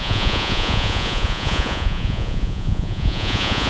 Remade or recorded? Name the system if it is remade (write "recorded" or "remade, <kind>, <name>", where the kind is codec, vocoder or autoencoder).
remade, vocoder, Vocos